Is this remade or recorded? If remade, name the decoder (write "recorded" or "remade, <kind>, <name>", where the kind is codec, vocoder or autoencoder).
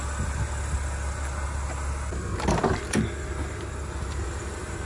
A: recorded